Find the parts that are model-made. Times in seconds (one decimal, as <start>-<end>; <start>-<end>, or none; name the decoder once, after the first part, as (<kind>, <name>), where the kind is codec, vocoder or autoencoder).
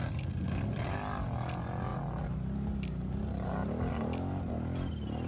none